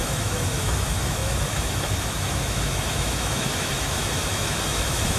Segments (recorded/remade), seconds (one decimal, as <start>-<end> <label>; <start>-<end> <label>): 0.0-5.2 remade